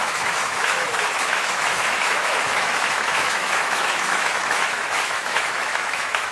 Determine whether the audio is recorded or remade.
remade